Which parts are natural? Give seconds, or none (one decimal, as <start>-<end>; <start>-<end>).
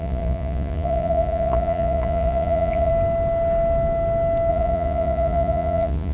2.9-4.5